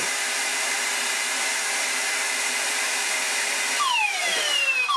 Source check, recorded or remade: remade